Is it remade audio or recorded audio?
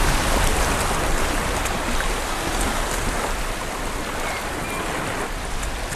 recorded